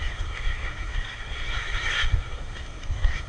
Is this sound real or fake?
fake